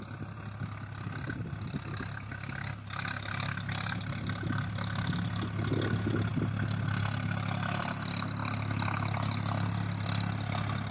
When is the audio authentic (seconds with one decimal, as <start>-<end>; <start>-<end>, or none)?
0.0-10.9